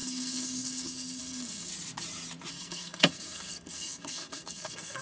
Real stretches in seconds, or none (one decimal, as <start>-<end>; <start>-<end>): 1.7-2.5